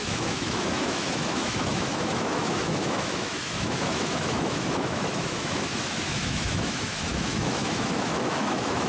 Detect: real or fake fake